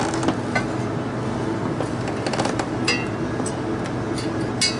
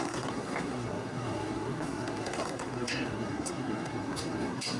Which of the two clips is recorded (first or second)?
first